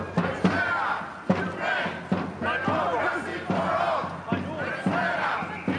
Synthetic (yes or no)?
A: no